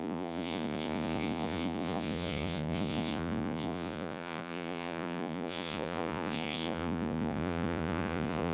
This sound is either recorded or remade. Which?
remade